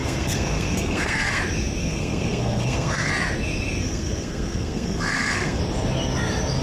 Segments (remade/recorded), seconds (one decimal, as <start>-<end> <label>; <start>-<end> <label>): 0.0-1.4 remade; 1.4-1.8 recorded; 1.8-3.1 remade; 3.1-3.8 recorded; 3.8-5.6 remade; 5.6-6.6 recorded